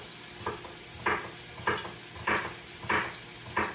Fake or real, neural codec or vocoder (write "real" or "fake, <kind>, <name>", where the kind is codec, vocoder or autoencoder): real